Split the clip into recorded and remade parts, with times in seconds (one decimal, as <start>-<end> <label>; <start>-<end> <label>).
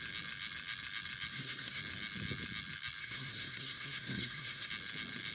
0.0-1.3 recorded; 1.3-1.8 remade; 1.8-3.0 recorded; 3.0-4.7 remade; 4.7-5.3 recorded